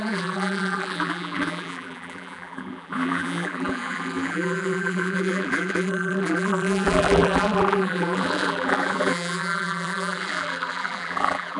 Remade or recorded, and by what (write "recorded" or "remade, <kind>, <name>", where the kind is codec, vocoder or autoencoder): remade, vocoder, BigVGAN v2